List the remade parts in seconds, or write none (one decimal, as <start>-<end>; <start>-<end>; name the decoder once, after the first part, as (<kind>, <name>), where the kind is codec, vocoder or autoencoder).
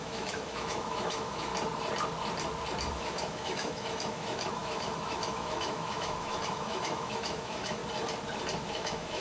0.0-1.5 (autoencoder, DAC-VAE); 2.9-7.8; 8.6-9.2